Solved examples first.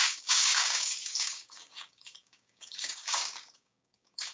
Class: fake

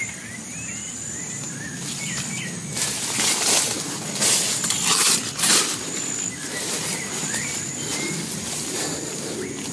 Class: real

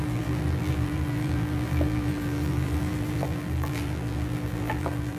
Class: fake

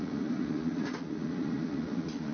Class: fake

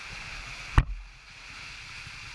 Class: real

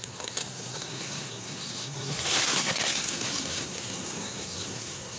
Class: fake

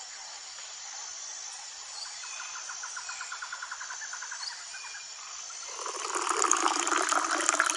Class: real